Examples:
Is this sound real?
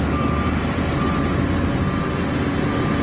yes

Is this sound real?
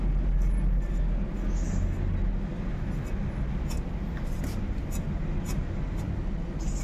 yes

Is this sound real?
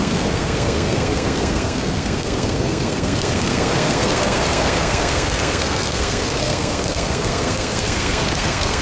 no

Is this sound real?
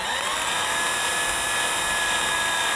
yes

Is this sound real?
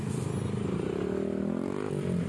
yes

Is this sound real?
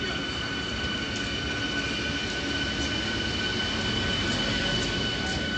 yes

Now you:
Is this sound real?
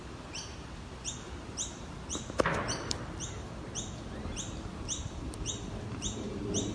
yes